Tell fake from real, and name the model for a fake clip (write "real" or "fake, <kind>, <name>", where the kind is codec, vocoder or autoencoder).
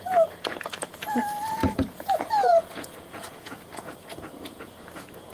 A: fake, vocoder, Vocos